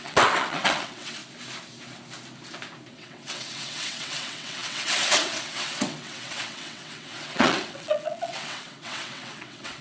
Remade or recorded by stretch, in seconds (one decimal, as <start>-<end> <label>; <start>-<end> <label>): 0.0-1.2 remade; 1.2-2.9 recorded; 2.9-9.8 remade